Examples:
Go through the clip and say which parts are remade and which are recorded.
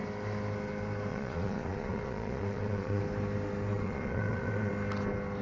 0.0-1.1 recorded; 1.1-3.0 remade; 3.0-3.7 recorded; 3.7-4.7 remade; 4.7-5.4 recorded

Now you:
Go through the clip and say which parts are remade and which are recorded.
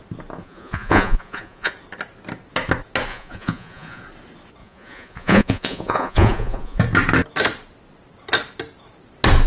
0.0-0.4 recorded; 0.4-1.7 remade; 1.7-3.1 recorded; 3.1-4.0 remade; 4.0-4.6 recorded; 4.6-6.8 remade; 6.8-9.5 recorded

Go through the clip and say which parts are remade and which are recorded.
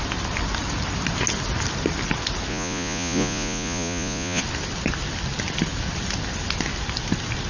0.0-2.5 recorded; 2.5-4.4 remade; 4.4-7.5 recorded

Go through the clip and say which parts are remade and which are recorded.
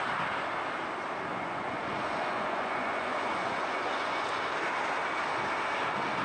0.0-1.3 recorded; 1.3-4.4 remade; 4.4-6.2 recorded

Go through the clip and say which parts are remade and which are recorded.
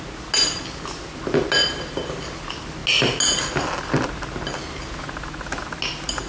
0.0-6.3 recorded